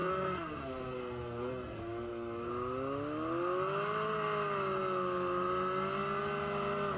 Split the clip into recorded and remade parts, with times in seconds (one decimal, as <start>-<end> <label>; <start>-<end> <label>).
0.0-2.5 remade; 2.5-7.0 recorded